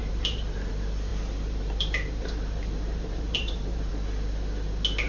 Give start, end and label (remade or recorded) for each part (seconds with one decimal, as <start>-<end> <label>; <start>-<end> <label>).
0.0-0.7 remade; 0.7-1.1 recorded; 1.1-3.9 remade; 3.9-5.1 recorded